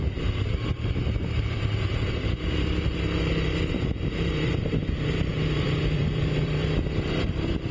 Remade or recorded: remade